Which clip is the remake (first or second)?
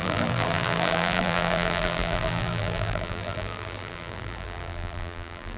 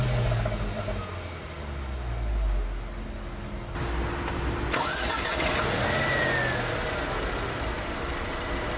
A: first